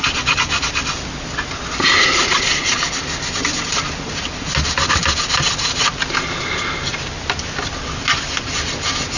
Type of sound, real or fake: real